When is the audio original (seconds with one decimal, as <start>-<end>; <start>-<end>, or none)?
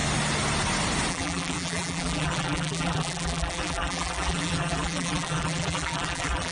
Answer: 0.0-1.1